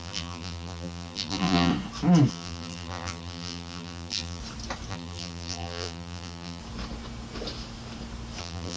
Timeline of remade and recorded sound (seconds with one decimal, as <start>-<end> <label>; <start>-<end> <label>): 0.0-1.7 remade; 1.7-2.3 recorded; 2.3-4.4 remade; 4.4-4.9 recorded; 4.9-6.6 remade; 6.6-8.4 recorded; 8.4-8.8 remade